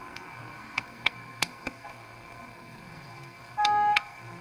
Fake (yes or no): yes